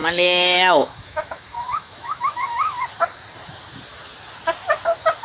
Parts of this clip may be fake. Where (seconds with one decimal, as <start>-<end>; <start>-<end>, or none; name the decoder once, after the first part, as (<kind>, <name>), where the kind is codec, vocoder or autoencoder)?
0.0-2.8 (autoencoder, DAC-VAE)

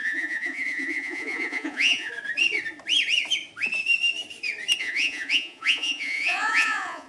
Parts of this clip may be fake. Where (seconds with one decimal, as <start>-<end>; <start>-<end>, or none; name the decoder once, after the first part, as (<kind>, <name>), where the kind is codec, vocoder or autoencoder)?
0.0-2.1 (vocoder, Vocos); 4.8-7.1

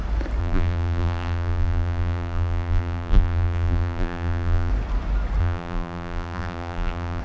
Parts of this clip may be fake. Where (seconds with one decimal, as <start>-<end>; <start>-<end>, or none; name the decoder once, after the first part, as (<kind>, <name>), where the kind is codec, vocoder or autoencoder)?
0.4-4.7 (vocoder, BigVGAN v2); 5.4-7.2

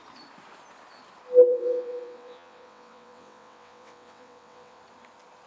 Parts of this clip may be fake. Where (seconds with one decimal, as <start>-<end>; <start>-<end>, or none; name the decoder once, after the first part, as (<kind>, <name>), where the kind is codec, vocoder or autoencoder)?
1.5-4.8 (vocoder, WaveNeXt)

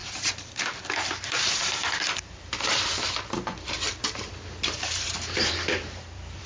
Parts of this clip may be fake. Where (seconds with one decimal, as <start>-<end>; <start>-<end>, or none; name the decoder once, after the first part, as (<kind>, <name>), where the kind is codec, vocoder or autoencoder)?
0.0-6.5 (vocoder, BigVGAN v2)

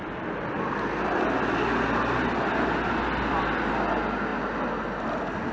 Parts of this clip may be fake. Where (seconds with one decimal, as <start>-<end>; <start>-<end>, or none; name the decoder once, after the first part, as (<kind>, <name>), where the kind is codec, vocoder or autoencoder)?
none